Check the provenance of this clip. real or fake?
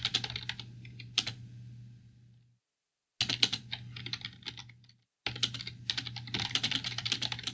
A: real